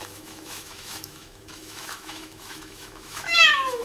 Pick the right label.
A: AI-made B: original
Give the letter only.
A